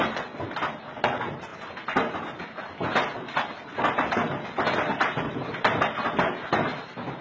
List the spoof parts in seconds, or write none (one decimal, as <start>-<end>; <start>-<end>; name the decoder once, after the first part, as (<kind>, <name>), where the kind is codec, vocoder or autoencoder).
none